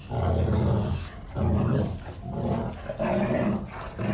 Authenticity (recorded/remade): recorded